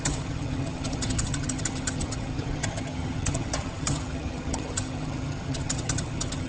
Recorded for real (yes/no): no